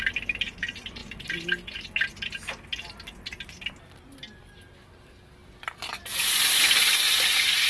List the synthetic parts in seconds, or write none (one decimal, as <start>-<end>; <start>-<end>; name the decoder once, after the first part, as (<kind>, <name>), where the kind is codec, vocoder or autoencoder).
none